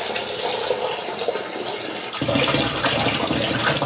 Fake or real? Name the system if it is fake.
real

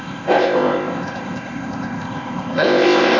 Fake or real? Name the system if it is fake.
fake, codec, ZipCodec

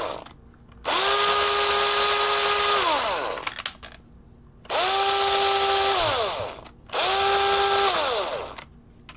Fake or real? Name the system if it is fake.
real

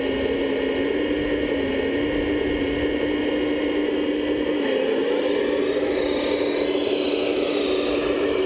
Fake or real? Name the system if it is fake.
real